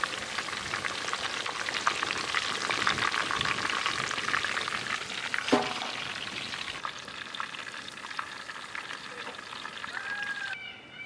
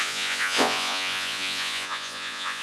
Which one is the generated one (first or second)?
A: second